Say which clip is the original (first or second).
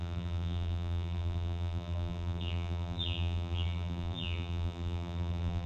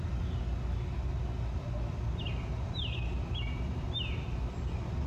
second